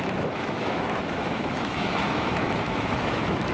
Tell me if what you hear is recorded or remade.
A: remade